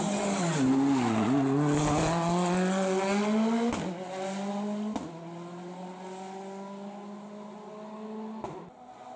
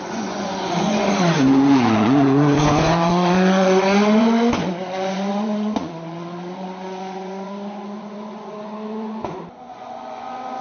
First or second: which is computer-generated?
second